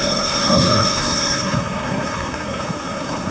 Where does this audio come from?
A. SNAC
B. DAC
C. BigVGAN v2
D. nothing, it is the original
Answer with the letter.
A